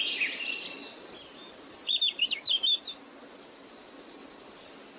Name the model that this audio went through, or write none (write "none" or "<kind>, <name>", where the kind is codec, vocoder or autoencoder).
none